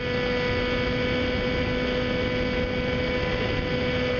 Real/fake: real